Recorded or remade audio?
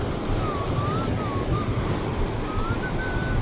recorded